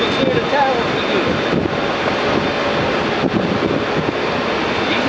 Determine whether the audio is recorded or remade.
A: recorded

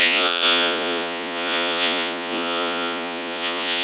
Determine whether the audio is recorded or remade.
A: remade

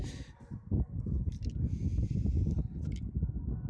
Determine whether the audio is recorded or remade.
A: recorded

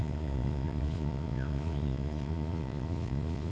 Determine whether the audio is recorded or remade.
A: remade